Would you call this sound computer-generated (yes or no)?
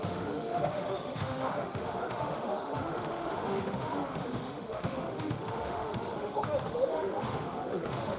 yes